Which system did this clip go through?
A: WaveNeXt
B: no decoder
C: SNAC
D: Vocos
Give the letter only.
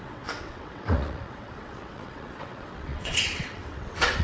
A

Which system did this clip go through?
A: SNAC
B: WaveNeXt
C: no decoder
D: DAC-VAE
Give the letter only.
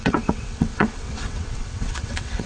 B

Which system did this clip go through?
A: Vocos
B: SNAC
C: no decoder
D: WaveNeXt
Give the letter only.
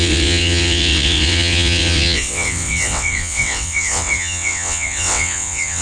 D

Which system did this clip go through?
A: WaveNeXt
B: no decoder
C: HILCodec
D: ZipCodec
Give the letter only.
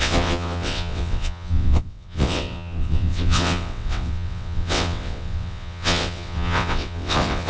A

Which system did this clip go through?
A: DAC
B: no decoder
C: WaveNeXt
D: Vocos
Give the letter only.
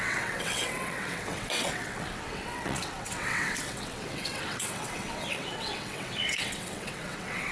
C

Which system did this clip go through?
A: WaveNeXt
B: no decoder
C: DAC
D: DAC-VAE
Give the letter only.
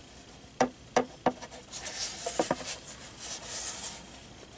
B